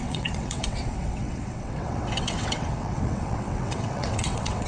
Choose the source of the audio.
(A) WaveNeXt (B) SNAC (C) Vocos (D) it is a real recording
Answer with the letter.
A